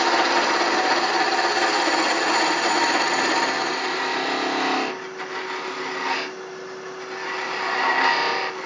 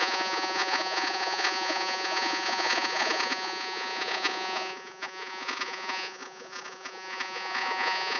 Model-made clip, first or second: second